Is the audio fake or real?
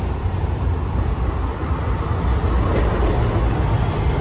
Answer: real